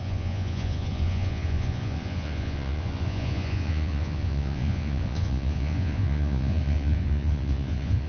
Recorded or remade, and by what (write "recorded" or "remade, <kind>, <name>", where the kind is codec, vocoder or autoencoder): remade, vocoder, Vocos